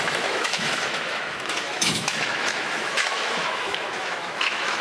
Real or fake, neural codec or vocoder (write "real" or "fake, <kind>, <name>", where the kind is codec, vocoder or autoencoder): fake, autoencoder, DAC-VAE